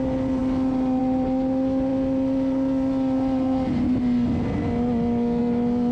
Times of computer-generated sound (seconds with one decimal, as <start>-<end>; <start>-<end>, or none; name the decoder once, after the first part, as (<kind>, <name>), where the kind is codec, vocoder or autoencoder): none